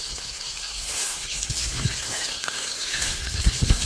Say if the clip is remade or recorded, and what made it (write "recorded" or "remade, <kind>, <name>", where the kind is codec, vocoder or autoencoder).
remade, codec, SNAC